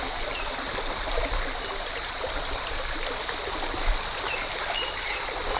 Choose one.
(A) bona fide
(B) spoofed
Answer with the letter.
A